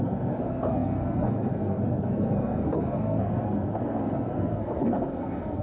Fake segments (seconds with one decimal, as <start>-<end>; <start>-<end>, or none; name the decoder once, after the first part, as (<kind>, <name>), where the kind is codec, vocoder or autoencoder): 0.0-5.6 (codec, SNAC)